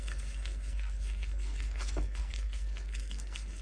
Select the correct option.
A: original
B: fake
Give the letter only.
B